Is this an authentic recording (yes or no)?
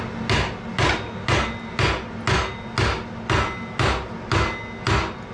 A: yes